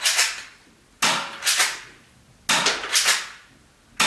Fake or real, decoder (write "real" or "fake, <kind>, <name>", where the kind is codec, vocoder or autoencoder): real